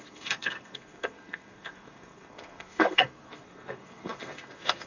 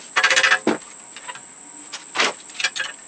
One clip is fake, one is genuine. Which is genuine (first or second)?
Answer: second